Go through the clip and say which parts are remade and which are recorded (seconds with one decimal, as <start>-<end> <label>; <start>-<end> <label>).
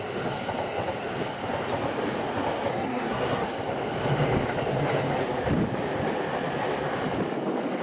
0.0-2.7 recorded; 2.7-3.5 remade; 3.5-7.8 recorded